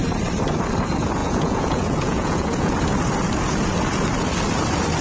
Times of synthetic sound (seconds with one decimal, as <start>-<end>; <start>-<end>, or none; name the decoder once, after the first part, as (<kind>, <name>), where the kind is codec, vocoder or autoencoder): 1.2-2.7 (vocoder, Vocos)